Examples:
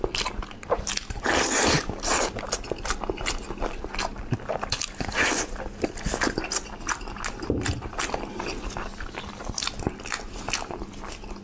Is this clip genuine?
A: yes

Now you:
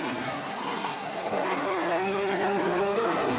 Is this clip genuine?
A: no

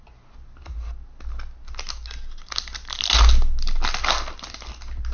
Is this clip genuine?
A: yes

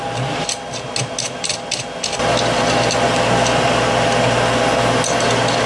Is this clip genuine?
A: yes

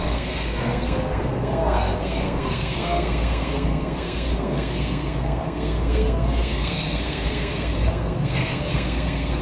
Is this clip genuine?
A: no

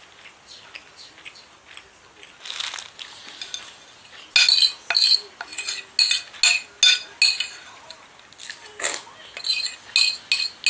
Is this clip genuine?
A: yes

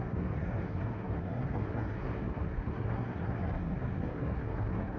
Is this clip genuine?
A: no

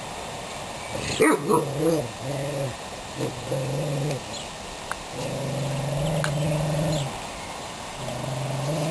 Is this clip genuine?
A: yes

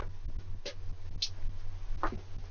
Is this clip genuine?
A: yes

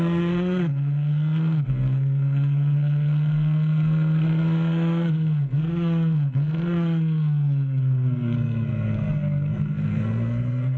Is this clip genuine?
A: no